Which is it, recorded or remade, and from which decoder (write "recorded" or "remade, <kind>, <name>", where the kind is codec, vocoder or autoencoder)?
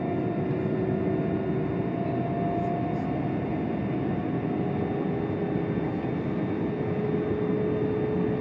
recorded